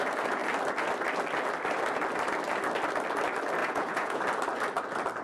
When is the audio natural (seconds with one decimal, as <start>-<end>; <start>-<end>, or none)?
0.0-3.6; 4.2-5.2